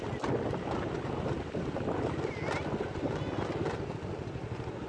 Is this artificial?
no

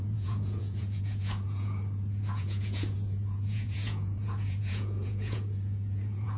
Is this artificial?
yes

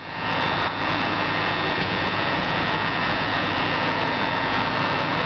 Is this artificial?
yes